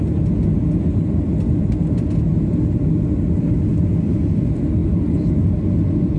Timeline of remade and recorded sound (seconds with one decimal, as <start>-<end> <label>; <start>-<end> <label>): 0.0-6.2 recorded